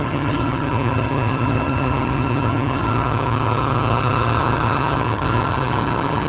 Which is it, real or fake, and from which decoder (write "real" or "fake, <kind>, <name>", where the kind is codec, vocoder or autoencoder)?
fake, vocoder, HiFi-GAN